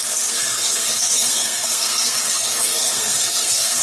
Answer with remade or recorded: remade